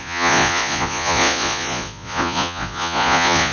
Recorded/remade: remade